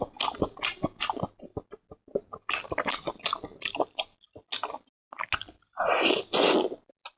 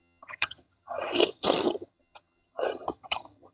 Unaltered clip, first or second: first